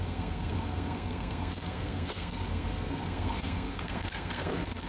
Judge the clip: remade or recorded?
remade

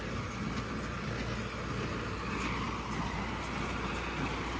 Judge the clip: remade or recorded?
recorded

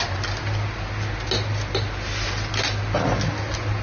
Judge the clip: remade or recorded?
recorded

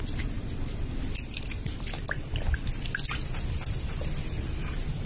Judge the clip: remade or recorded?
remade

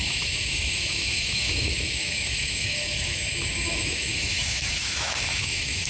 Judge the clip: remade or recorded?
remade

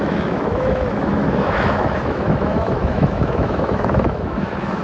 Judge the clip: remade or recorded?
remade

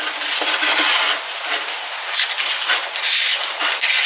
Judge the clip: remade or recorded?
recorded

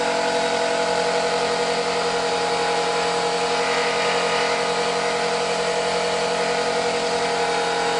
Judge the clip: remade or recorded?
recorded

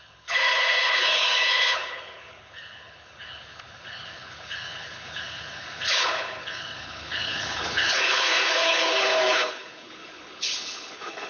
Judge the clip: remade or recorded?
remade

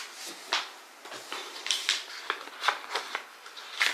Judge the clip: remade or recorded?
recorded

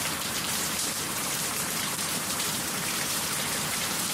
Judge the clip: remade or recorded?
remade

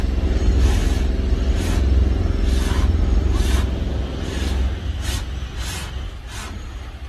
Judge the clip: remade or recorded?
recorded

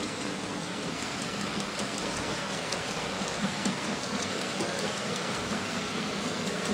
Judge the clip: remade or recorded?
remade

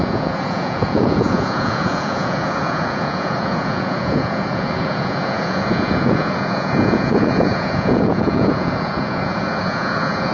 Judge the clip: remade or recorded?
remade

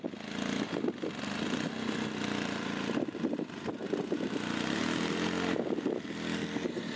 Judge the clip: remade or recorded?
recorded